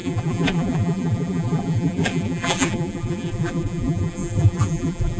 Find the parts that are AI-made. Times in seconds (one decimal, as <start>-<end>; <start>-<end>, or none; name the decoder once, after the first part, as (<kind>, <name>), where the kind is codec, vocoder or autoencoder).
0.0-5.2 (vocoder, BigVGAN v2)